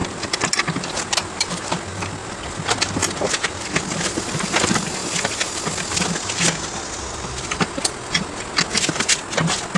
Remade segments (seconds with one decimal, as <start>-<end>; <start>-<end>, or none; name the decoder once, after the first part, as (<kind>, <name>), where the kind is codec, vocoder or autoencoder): none